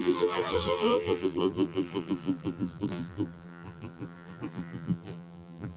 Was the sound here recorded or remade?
remade